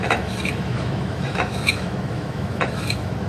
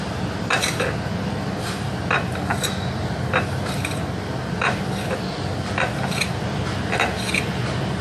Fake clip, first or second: first